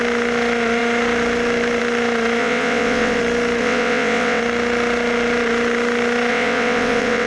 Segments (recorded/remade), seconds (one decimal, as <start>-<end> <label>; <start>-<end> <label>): 0.0-2.4 recorded; 2.4-3.2 remade; 3.2-3.6 recorded; 3.6-4.4 remade; 4.4-6.3 recorded; 6.3-7.3 remade